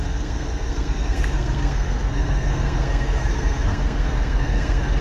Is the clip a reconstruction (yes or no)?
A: yes